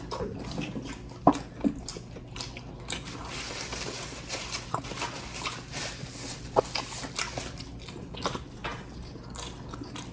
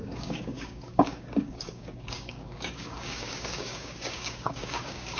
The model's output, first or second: second